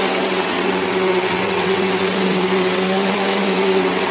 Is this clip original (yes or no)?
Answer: no